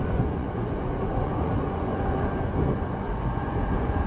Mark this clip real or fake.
fake